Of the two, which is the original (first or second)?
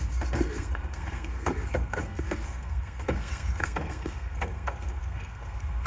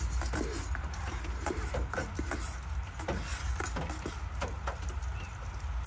second